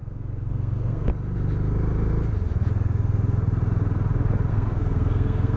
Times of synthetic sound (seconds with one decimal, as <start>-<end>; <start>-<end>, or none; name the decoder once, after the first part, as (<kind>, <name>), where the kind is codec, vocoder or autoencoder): 0.0-1.1 (codec, SNAC); 4.5-5.6